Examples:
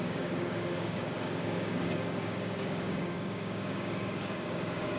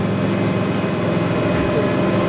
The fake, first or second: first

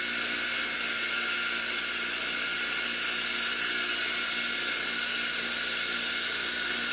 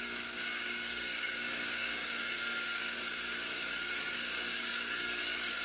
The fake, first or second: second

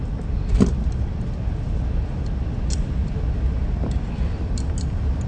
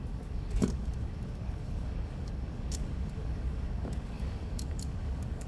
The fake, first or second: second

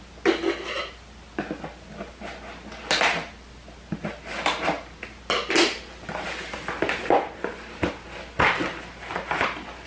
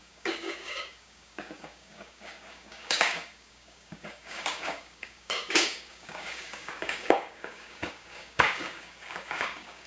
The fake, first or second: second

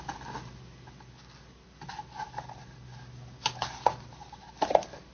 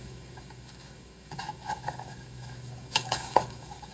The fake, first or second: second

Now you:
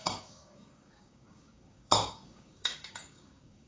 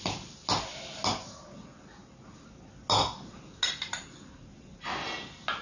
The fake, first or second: first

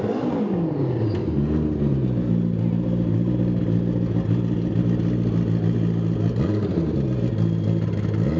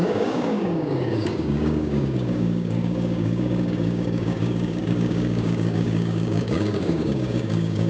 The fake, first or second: second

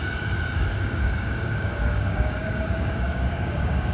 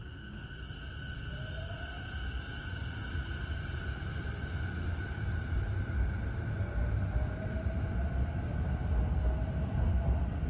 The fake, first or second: first